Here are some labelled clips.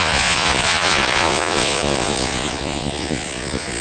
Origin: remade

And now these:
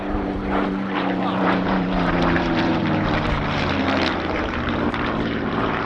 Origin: remade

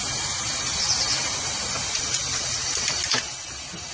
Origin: recorded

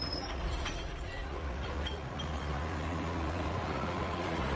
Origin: remade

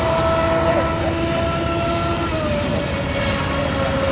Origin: recorded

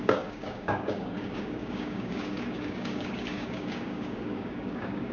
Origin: remade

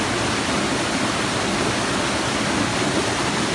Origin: recorded